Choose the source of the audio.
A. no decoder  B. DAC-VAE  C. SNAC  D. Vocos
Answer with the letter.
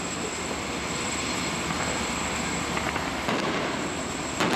A